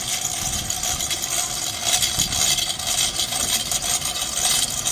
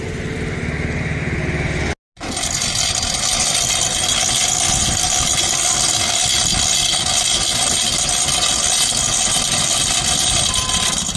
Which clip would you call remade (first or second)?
first